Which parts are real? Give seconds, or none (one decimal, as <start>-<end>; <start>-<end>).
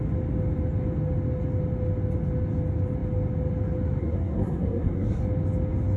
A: 0.0-4.0; 5.2-6.0